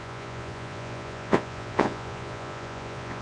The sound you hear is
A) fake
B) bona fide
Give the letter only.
A